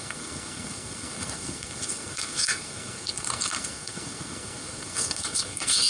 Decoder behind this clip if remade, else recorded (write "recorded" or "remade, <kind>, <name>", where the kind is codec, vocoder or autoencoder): remade, codec, SNAC